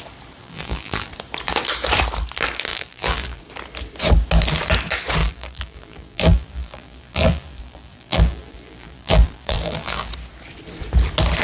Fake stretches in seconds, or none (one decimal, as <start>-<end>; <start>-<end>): 0.4-1.1; 2.7-3.4; 5.2-10.1